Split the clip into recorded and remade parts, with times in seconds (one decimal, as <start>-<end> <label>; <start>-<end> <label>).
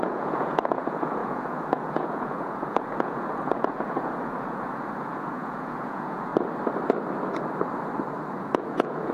0.0-6.3 remade; 6.3-8.4 recorded; 8.4-9.1 remade